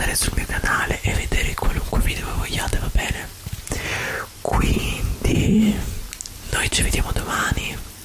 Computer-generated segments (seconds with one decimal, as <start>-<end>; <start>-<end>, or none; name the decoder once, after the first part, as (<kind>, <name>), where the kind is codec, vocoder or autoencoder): none